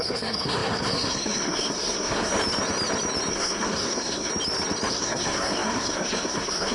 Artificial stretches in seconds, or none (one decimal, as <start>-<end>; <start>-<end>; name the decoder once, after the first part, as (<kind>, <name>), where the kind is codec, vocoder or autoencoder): 0.0-2.3 (codec, SNAC); 3.3-4.3; 4.9-6.7